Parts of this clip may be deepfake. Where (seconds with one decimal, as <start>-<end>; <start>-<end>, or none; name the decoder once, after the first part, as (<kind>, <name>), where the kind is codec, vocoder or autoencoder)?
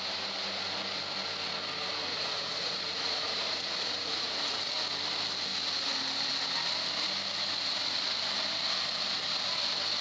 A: 2.1-4.7 (vocoder, Vocos)